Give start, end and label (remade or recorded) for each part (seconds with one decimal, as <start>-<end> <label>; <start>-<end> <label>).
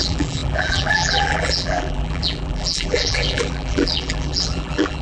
0.0-5.0 remade